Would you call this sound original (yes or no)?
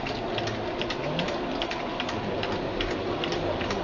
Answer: yes